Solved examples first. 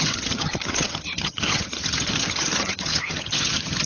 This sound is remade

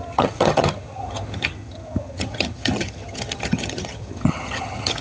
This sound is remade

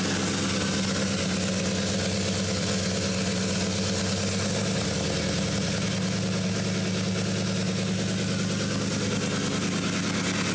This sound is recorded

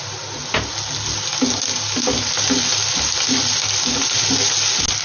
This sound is recorded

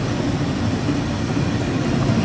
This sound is recorded